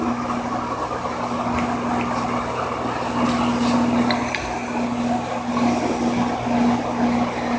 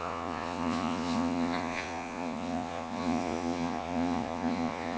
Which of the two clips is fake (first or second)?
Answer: second